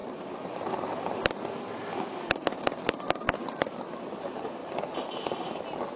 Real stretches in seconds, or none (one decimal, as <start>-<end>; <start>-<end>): 0.0-6.0